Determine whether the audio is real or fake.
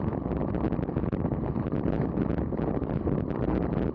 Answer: real